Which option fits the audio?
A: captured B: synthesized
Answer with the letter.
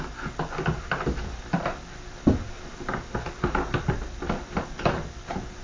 A